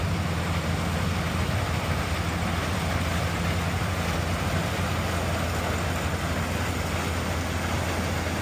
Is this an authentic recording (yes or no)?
yes